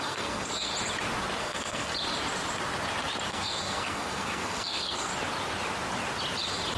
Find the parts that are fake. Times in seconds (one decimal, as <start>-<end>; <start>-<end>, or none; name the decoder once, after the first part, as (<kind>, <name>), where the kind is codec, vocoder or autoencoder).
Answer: 0.0-0.7 (codec, SNAC); 1.4-1.9; 3.3-5.1